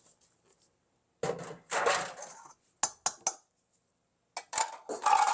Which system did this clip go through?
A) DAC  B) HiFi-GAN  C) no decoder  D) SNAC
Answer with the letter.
C